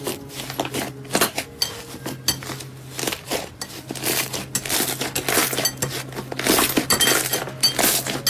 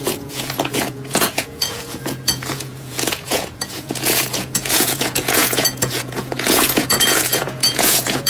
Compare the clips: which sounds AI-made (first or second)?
second